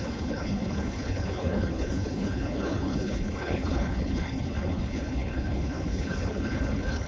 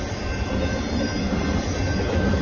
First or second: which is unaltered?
second